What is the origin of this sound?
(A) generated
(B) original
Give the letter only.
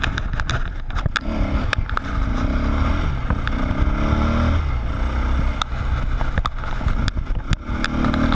B